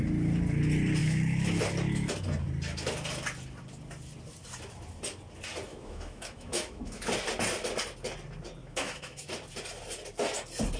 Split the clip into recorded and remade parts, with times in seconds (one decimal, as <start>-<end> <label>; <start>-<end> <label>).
0.0-1.0 recorded; 1.0-1.6 remade; 1.6-5.7 recorded; 5.7-7.1 remade; 7.1-8.6 recorded; 8.6-9.3 remade; 9.3-10.8 recorded